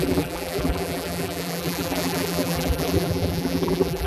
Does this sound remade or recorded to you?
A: remade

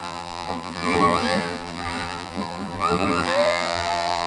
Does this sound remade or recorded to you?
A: remade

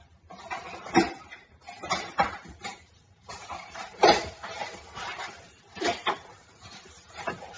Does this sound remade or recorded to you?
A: remade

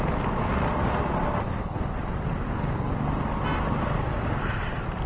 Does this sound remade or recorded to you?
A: recorded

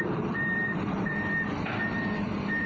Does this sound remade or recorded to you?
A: remade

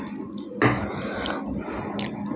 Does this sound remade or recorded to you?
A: recorded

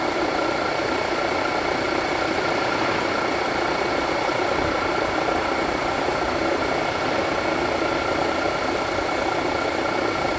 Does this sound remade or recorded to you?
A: remade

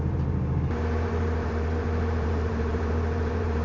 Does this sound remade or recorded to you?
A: remade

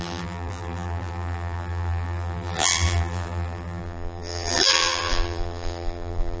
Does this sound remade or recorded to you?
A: remade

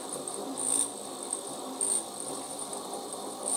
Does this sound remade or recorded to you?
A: remade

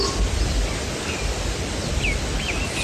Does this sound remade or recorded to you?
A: recorded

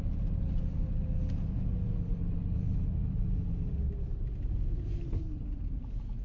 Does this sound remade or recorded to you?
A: recorded